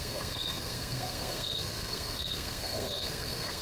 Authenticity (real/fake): fake